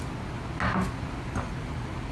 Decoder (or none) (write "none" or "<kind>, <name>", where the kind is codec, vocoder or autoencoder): none